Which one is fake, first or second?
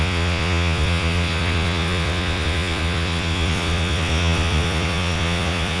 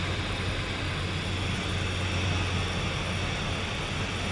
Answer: first